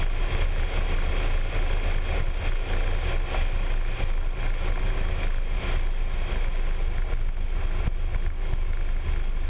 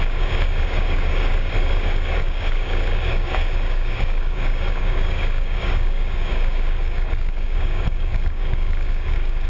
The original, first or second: first